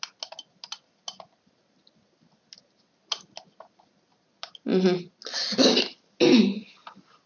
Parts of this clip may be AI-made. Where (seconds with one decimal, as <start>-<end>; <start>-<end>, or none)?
none